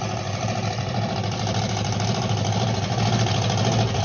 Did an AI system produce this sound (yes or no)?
no